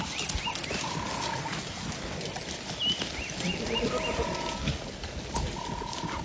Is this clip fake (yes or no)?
no